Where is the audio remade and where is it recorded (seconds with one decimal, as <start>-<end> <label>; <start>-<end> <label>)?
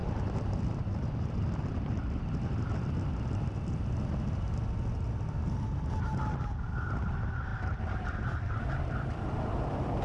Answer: 0.0-1.9 remade; 1.9-7.5 recorded; 7.5-10.0 remade